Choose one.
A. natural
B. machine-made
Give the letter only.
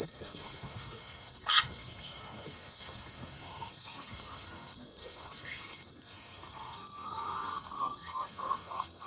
B